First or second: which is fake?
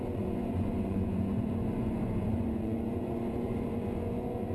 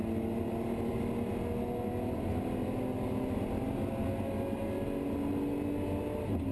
first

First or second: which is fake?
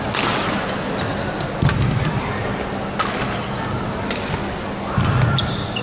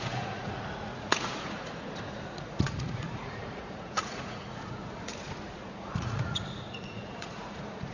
second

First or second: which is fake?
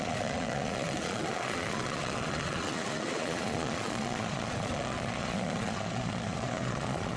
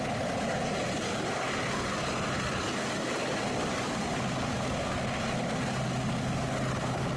first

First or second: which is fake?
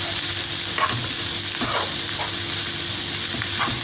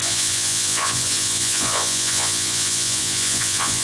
second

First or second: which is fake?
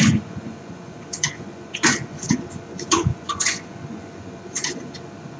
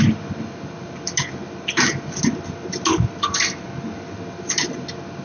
first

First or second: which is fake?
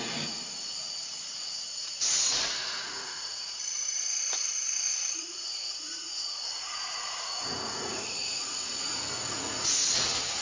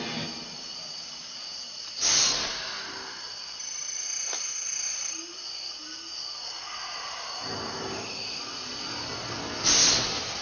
first